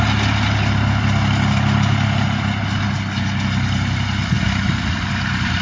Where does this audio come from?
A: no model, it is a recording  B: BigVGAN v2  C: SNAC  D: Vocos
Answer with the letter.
A